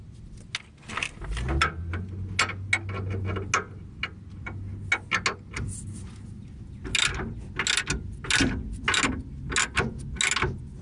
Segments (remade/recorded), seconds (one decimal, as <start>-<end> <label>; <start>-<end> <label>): 0.0-10.8 recorded